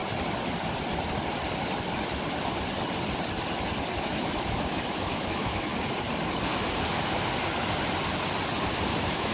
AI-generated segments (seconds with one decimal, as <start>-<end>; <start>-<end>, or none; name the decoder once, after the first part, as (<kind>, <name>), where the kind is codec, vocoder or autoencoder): 4.0-5.7 (autoencoder, DAC-VAE); 8.9-9.3